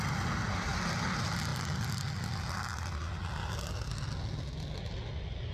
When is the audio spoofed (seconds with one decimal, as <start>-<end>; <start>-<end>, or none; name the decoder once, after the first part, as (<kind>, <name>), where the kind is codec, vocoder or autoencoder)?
none